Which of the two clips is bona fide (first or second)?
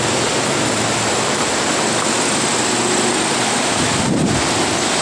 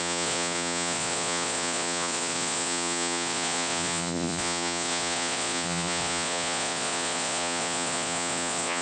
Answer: first